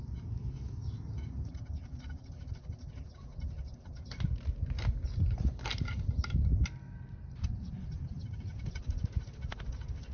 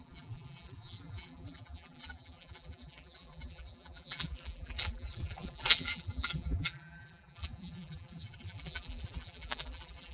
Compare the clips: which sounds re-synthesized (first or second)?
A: second